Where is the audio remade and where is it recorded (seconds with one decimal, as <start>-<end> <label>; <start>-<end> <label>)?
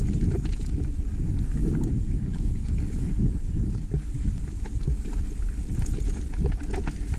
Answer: 0.0-1.6 recorded; 1.6-5.3 remade; 5.3-7.2 recorded